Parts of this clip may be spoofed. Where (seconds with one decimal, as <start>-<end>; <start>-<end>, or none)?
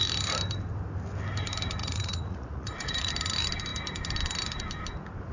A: 1.8-3.1